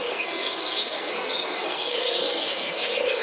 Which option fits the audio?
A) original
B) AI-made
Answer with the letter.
B